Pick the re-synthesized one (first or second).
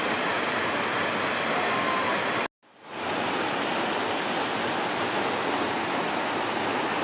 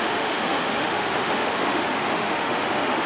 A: second